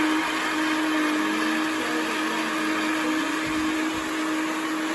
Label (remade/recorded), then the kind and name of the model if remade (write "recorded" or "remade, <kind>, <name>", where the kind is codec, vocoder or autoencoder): recorded